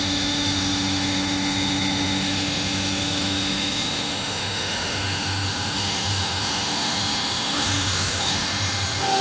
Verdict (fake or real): fake